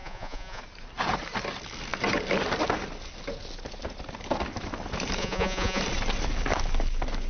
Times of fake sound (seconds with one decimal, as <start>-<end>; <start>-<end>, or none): 0.0-0.6; 5.2-5.8